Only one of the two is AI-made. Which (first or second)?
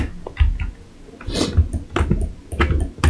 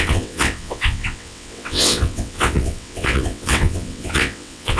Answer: second